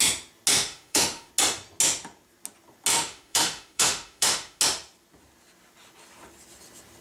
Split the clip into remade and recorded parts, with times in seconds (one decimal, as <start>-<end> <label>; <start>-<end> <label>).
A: 0.0-0.5 recorded; 0.5-1.3 remade; 1.3-2.9 recorded; 2.9-4.6 remade; 4.6-7.0 recorded